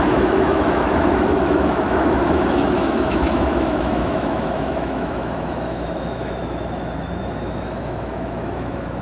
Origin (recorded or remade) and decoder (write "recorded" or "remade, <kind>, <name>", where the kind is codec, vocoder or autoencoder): remade, autoencoder, DAC-VAE